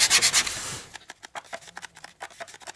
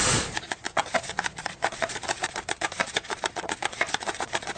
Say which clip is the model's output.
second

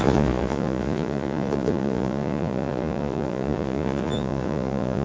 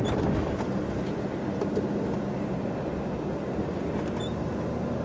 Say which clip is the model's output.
first